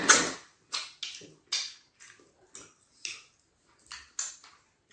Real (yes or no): yes